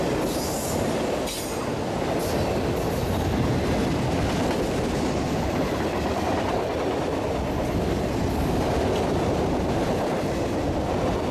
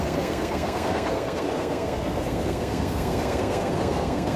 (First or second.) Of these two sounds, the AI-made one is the second